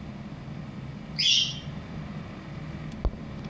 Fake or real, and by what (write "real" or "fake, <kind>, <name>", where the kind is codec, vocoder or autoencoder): real